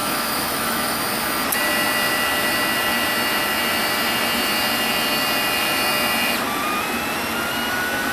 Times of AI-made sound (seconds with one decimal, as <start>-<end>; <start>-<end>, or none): 0.0-1.0